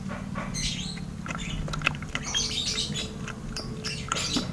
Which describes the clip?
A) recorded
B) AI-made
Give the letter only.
A